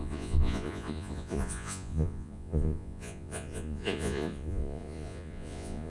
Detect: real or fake fake